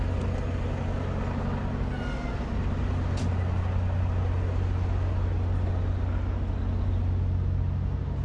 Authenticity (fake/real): real